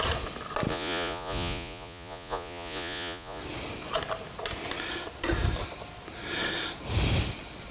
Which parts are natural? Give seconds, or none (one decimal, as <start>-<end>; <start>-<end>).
0.0-0.7; 3.4-7.7